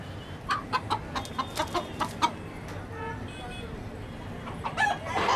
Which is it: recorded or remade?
recorded